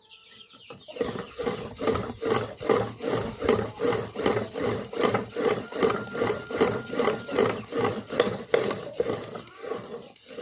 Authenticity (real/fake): real